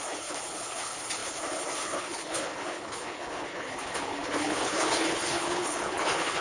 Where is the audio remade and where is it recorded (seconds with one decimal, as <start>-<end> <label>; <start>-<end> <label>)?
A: 0.0-6.4 remade